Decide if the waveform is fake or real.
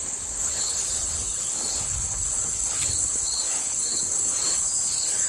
fake